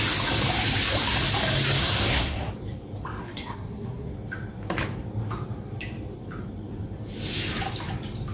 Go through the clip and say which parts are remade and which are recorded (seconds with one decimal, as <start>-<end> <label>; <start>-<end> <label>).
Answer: 0.0-1.8 recorded; 1.8-2.5 remade; 2.5-3.2 recorded; 3.2-4.1 remade; 4.1-8.3 recorded